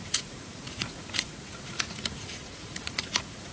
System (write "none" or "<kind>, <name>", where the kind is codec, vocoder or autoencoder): vocoder, Vocos